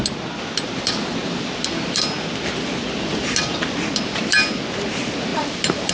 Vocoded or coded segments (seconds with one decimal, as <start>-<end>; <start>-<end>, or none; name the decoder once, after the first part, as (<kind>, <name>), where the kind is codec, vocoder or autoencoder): none